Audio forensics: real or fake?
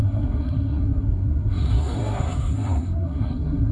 fake